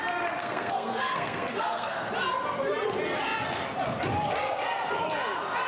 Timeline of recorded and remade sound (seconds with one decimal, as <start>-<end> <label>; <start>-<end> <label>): 0.0-0.4 recorded; 0.4-2.1 remade; 2.1-5.7 recorded